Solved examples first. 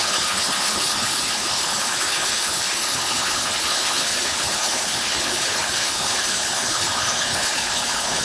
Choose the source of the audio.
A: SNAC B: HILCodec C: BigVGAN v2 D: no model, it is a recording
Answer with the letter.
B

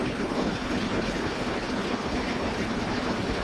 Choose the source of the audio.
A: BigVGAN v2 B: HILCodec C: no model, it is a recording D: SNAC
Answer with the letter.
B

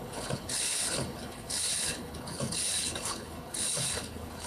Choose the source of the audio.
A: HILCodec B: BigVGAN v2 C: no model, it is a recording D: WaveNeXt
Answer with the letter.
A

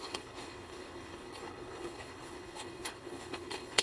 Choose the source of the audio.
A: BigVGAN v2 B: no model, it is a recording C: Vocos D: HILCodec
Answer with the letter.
D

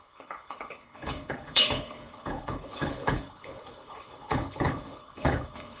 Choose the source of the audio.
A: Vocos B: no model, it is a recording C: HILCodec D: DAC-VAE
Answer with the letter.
C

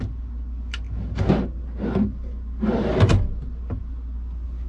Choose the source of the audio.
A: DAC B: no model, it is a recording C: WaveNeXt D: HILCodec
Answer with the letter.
B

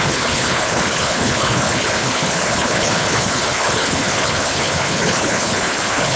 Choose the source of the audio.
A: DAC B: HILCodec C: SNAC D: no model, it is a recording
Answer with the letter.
B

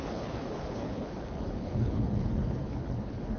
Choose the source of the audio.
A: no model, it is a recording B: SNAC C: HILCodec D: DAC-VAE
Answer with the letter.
C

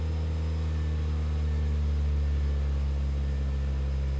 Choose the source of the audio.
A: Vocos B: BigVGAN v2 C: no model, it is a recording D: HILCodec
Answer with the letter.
C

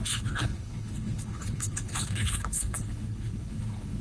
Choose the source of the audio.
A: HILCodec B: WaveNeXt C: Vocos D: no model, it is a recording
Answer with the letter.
A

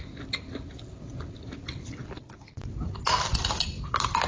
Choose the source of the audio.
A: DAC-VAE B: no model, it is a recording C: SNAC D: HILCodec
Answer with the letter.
B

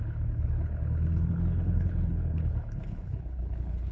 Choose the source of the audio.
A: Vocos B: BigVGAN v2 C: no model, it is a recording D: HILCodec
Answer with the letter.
D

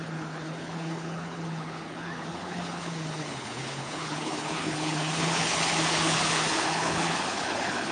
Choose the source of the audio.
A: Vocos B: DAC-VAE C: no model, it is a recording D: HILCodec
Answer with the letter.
D